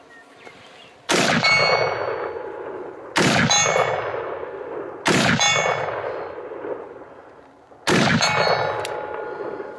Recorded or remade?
recorded